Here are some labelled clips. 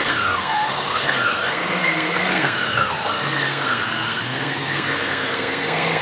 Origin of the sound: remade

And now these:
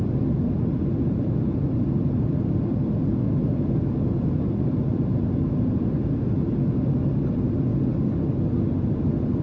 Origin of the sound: recorded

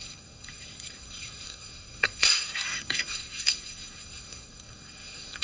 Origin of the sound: remade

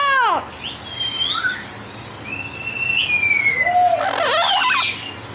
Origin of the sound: recorded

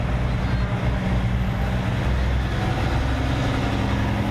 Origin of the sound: recorded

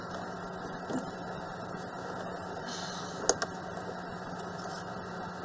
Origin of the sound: recorded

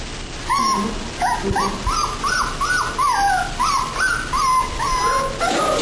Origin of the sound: recorded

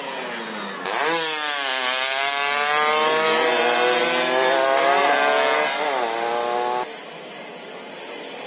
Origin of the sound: recorded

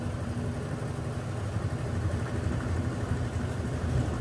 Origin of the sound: recorded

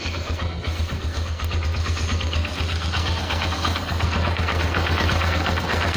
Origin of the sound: remade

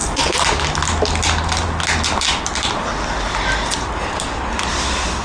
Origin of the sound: recorded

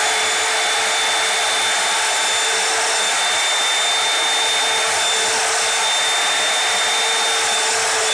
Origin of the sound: recorded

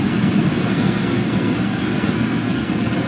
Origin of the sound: remade